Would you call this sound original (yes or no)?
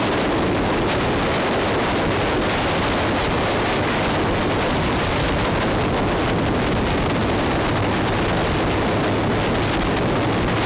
yes